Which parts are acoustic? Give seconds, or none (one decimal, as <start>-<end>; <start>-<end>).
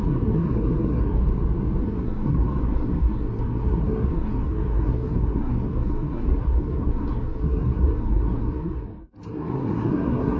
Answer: 1.2-1.8